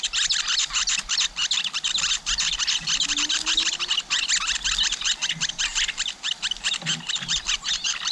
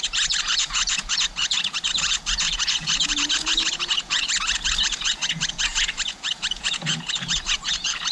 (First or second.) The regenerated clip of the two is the second